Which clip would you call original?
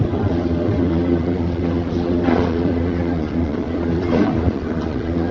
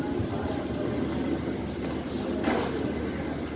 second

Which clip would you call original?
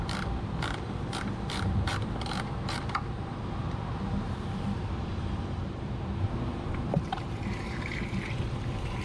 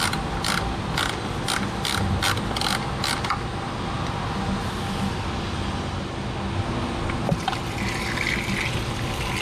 second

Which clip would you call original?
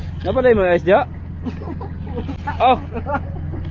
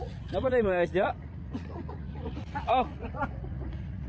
first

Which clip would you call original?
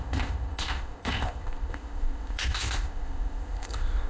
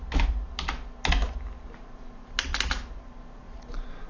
second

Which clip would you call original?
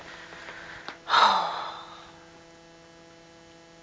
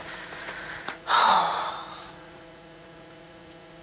first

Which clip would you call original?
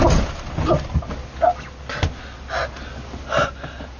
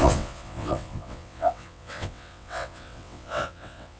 first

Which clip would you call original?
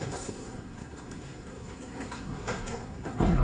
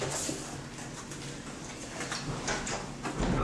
second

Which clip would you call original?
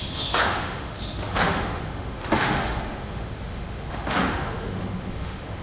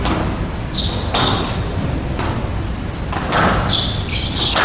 second